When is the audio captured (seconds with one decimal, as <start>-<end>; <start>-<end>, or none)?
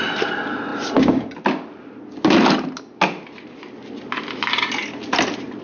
0.0-5.6